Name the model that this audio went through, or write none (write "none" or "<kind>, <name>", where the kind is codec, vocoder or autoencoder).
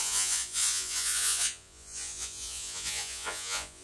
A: vocoder, Vocos